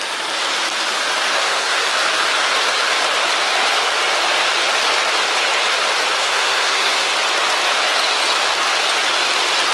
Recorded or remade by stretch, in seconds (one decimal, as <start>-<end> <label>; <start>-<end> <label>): 0.0-1.3 recorded; 1.3-1.9 remade; 1.9-6.2 recorded; 6.2-7.1 remade; 7.1-9.7 recorded